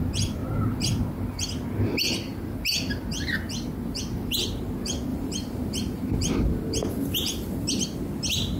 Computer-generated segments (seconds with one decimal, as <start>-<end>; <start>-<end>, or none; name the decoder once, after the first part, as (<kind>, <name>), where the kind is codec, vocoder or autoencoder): 5.1-6.3 (vocoder, BigVGAN v2)